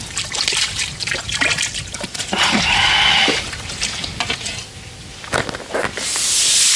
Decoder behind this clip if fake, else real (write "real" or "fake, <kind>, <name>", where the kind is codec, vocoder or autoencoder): real